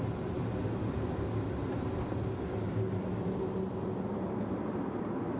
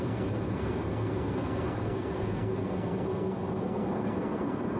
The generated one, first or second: second